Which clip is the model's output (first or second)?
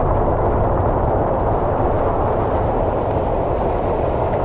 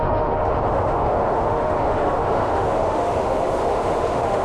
second